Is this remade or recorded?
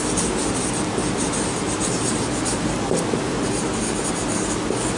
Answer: recorded